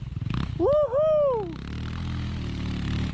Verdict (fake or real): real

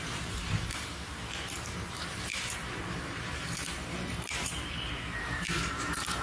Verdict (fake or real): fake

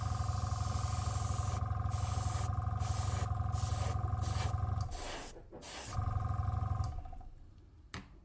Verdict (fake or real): real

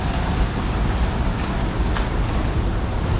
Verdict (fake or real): real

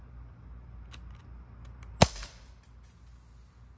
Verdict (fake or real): real